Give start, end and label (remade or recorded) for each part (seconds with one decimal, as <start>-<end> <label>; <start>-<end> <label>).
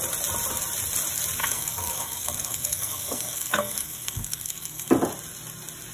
0.0-1.4 recorded; 1.4-4.9 remade; 4.9-5.9 recorded